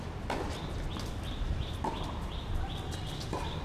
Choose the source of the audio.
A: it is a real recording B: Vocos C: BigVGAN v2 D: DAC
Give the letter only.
A